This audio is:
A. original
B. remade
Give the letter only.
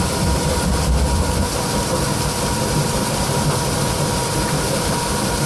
A